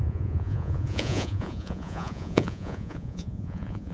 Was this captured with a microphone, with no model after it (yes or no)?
no